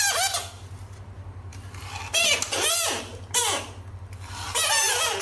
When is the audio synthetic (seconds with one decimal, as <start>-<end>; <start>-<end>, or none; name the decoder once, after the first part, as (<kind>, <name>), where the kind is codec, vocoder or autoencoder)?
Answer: none

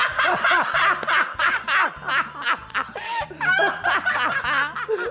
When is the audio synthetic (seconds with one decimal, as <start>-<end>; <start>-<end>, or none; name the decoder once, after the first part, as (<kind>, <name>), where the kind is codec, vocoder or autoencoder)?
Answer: 0.0-0.8 (vocoder, BigVGAN v2); 2.6-4.1

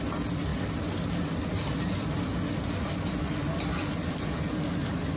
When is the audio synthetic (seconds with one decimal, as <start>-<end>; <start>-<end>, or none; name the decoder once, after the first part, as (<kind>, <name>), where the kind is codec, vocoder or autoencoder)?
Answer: none

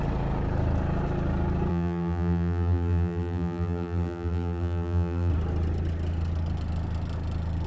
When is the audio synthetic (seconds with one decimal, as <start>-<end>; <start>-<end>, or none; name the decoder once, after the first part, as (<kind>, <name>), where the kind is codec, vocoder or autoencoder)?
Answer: 1.7-5.3 (vocoder, BigVGAN v2)

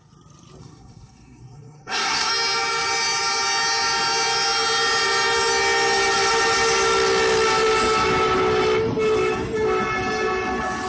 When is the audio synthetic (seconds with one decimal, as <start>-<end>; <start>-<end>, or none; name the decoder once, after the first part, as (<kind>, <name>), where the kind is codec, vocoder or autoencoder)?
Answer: 0.6-2.3 (codec, SNAC)